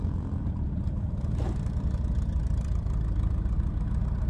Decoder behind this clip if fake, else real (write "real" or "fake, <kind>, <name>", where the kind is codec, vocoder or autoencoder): fake, vocoder, BigVGAN v2